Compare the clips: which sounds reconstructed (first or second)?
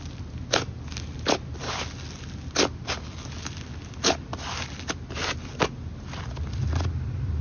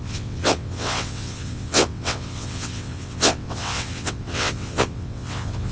second